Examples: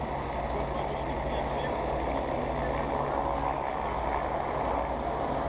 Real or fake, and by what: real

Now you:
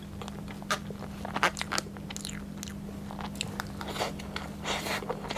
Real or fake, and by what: real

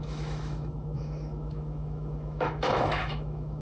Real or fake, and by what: fake, autoencoder, DAC-VAE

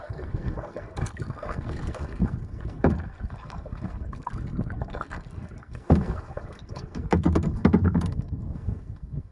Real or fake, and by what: fake, codec, SNAC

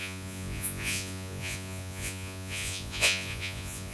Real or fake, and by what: fake, vocoder, Vocos